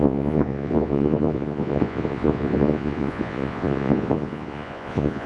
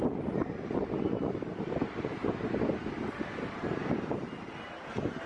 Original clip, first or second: second